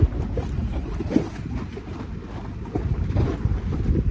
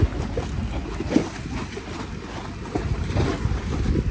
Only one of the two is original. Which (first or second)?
second